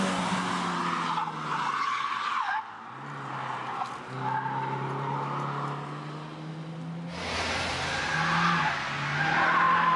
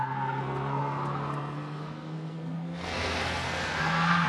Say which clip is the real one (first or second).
first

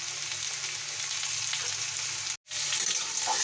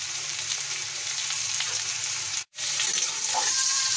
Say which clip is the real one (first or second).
first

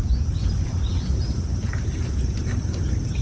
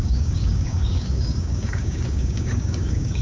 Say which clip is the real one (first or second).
first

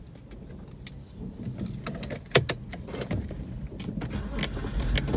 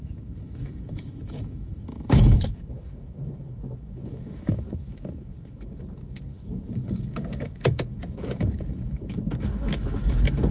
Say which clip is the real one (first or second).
first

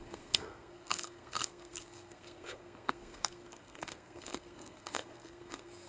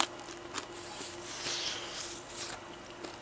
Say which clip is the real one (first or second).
second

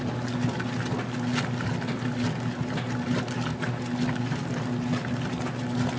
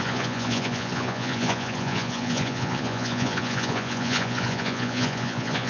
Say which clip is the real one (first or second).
first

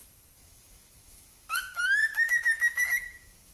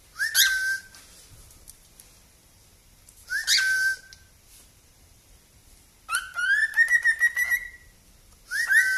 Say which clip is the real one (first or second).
second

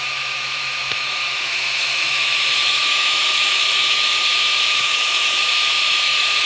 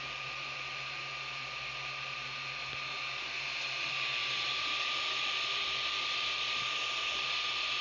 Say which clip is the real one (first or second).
second